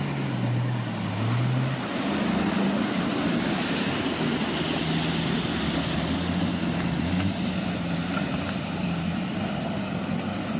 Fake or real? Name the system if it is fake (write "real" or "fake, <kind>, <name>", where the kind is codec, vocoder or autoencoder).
real